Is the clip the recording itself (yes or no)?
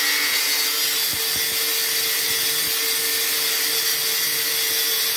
yes